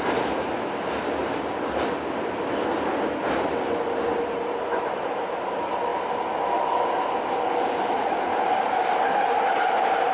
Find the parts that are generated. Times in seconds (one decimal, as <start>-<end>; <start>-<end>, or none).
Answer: none